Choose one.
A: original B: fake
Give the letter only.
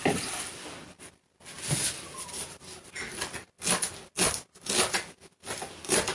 A